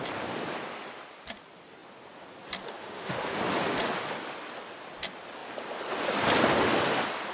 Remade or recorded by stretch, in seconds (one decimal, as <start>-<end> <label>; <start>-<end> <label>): 0.0-2.8 recorded; 2.8-3.4 remade; 3.4-7.3 recorded